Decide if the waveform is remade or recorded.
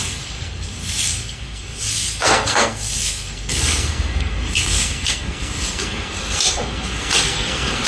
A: remade